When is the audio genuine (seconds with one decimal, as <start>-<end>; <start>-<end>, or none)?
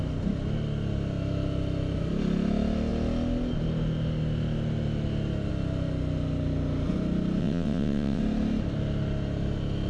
0.0-7.4; 8.2-9.9